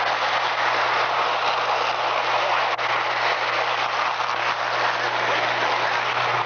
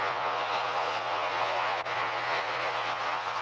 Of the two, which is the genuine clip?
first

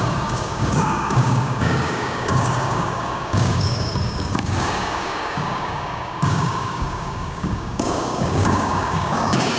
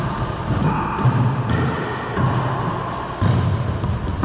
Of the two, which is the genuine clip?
second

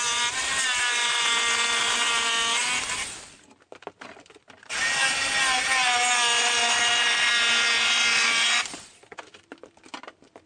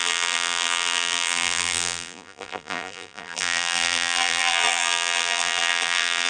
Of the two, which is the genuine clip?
first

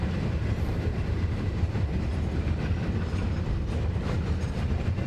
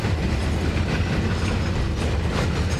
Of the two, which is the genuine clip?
second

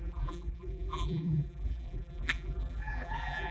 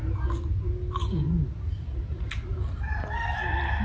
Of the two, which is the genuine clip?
second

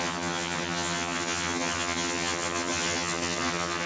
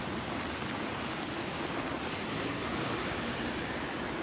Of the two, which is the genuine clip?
second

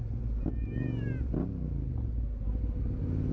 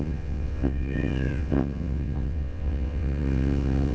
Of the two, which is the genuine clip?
first